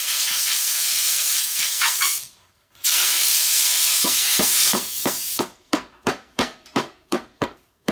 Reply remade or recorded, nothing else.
remade